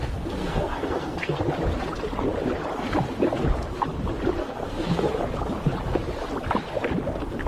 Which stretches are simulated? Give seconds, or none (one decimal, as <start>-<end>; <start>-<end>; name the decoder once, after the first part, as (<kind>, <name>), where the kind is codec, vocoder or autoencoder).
0.0-1.4 (codec, SNAC); 4.4-5.1